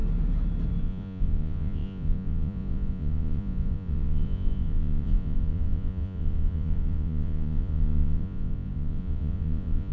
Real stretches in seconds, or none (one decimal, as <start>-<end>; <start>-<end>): 0.0-0.8